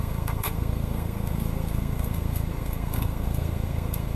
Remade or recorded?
remade